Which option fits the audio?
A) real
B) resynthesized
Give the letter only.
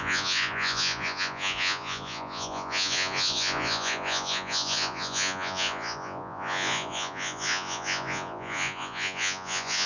B